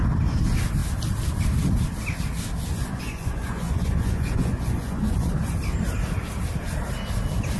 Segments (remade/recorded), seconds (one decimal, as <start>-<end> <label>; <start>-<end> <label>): 0.0-2.7 recorded; 2.7-5.3 remade; 5.3-7.6 recorded